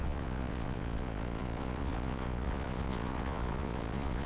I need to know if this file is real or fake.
fake